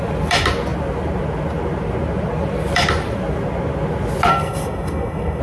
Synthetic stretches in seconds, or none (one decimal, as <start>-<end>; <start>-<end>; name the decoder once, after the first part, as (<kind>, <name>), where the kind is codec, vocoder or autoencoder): 4.3-5.4 (codec, SNAC)